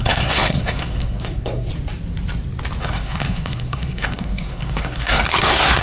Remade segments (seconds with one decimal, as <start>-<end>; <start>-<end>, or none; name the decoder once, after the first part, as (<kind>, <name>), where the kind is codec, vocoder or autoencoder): 0.0-1.7 (codec, SNAC); 2.8-5.8